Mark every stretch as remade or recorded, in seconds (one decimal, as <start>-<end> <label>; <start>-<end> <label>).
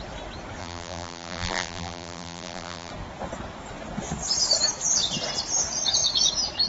0.0-0.6 recorded; 0.6-2.9 remade; 2.9-6.7 recorded